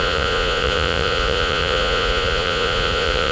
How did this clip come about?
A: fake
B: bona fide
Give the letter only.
A